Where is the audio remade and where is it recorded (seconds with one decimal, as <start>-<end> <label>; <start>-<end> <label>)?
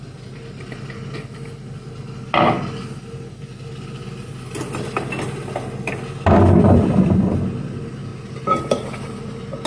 0.0-8.1 recorded; 8.1-8.9 remade; 8.9-9.7 recorded